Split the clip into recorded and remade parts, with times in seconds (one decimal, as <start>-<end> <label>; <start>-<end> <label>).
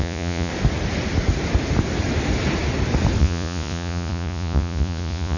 0.0-0.5 remade; 0.5-3.2 recorded; 3.2-5.4 remade